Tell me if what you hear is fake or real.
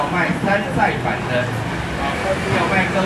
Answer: real